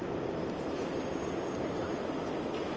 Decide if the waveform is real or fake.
real